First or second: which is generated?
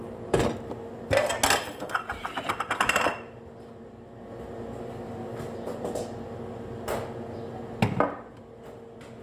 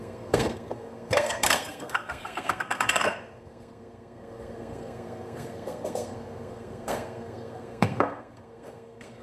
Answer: second